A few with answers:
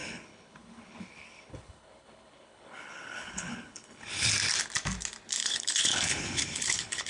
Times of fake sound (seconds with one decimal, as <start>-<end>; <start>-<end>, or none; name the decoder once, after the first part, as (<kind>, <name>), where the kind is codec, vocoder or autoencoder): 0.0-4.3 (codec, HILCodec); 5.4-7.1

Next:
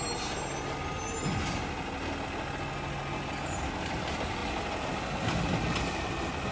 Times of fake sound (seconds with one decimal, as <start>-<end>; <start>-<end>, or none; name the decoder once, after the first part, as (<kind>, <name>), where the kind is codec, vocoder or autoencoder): none

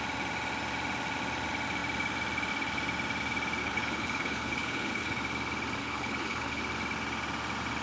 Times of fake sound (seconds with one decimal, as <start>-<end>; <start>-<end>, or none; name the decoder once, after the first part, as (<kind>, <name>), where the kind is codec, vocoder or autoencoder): 3.6-5.2 (codec, HILCodec); 5.8-6.6

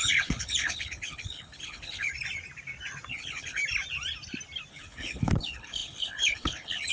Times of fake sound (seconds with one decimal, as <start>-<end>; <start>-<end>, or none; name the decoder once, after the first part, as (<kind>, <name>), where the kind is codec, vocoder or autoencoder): 0.0-2.1 (codec, HILCodec); 3.1-3.6; 4.7-6.9

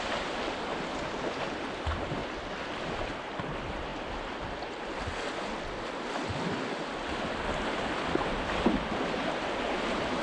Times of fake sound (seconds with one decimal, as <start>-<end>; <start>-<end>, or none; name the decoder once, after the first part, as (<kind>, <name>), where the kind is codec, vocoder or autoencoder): none

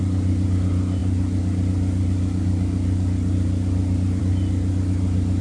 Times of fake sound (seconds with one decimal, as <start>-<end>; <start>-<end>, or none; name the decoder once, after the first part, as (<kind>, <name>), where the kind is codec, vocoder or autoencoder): none

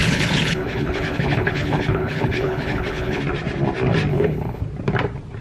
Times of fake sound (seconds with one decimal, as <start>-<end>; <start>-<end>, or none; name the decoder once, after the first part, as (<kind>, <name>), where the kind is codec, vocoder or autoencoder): 0.0-3.2 (codec, HILCodec); 4.1-4.6